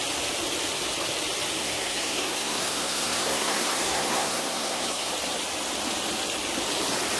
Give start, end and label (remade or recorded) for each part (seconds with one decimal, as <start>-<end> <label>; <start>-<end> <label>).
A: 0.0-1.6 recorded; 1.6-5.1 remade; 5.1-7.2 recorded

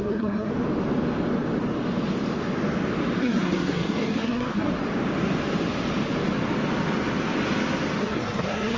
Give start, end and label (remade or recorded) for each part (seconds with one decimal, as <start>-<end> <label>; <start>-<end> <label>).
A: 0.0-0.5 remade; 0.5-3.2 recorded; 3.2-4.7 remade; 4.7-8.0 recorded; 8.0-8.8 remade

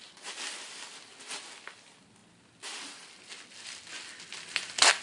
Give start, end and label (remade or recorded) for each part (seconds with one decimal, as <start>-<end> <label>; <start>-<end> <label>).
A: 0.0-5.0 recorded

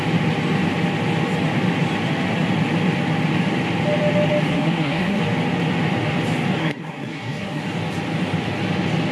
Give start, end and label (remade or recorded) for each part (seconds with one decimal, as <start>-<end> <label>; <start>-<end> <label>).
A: 0.0-4.5 recorded; 4.5-5.2 remade; 5.2-6.6 recorded; 6.6-7.6 remade; 7.6-9.1 recorded